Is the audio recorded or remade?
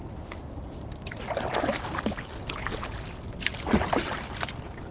recorded